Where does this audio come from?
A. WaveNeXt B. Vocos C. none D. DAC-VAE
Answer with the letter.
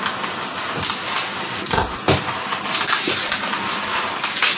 C